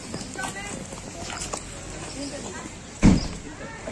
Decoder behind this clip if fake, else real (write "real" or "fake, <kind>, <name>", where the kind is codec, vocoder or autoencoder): real